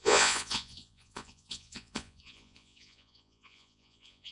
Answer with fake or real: fake